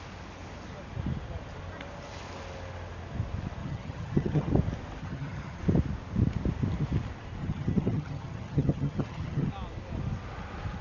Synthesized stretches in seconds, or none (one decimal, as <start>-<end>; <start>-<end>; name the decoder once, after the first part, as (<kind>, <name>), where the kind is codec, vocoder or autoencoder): 3.6-4.5 (vocoder, HiFi-GAN); 5.0-5.6; 7.4-9.5